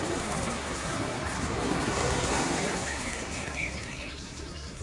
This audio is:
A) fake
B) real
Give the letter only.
A